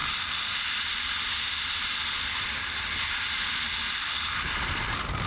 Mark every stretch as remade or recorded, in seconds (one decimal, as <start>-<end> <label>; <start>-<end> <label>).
0.0-5.3 recorded